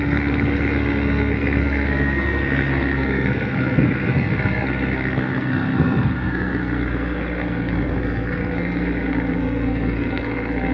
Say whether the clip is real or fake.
fake